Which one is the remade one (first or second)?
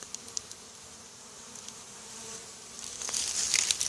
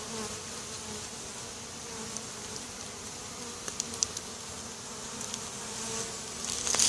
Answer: first